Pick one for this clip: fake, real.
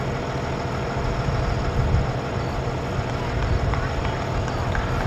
real